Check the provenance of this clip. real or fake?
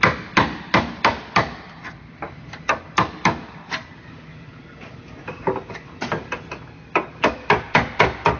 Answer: real